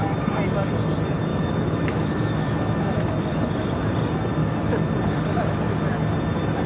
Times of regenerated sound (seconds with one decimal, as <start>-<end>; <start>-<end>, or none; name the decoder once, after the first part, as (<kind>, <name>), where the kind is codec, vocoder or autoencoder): 1.3-3.1 (autoencoder, DAC-VAE); 4.4-4.9